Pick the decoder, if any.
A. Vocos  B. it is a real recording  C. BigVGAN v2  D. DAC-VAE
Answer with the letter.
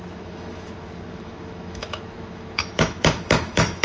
D